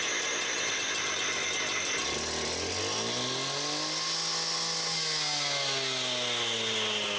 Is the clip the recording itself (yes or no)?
yes